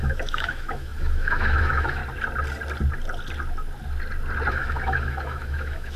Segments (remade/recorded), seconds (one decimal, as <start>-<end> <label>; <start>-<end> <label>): 0.0-2.0 remade; 2.0-4.5 recorded; 4.5-6.0 remade